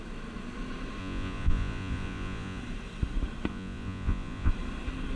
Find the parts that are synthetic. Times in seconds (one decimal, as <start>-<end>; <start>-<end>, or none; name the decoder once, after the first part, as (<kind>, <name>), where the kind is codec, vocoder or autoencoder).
1.0-2.6 (vocoder, Vocos); 3.5-4.5